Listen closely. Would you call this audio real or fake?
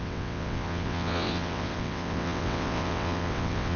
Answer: fake